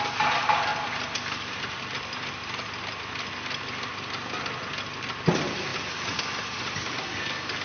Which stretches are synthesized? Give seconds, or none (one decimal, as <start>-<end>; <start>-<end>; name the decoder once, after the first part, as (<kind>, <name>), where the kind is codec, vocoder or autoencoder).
0.7-2.7 (vocoder, BigVGAN v2); 5.7-6.6